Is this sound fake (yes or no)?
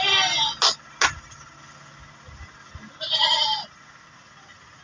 no